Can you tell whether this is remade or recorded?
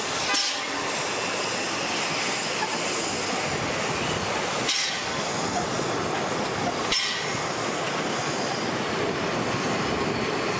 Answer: recorded